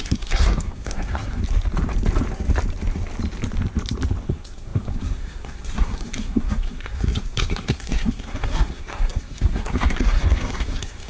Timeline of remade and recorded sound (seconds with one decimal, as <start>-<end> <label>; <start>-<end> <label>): 0.0-1.4 remade; 1.4-4.3 recorded; 4.3-11.1 remade